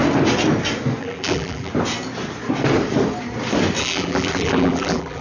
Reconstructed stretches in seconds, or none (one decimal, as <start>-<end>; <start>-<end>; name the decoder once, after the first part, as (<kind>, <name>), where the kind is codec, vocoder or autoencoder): 1.0-1.7 (vocoder, BigVGAN v2); 3.8-5.2